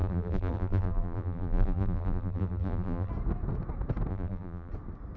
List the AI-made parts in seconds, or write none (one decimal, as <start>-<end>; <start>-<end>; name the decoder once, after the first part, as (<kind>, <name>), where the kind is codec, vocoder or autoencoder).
0.0-3.1 (vocoder, BigVGAN v2); 4.1-4.7